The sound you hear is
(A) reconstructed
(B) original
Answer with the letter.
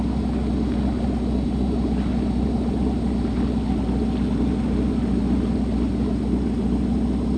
B